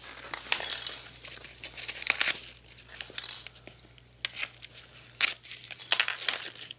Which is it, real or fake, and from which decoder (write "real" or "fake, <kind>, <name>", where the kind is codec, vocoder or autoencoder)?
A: real